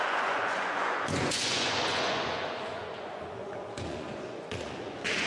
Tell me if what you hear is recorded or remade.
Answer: remade